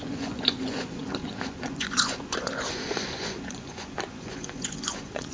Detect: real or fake fake